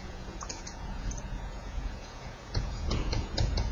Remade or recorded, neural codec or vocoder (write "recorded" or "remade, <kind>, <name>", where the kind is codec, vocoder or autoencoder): remade, vocoder, Vocos